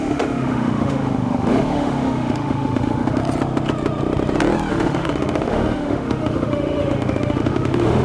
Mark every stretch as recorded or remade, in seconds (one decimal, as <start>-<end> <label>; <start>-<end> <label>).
0.0-3.2 remade; 3.2-4.7 recorded; 4.7-8.0 remade